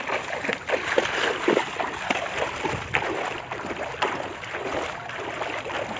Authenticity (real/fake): real